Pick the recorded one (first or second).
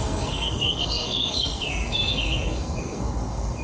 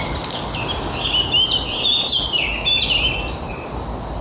second